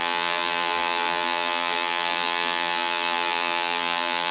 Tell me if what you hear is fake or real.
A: fake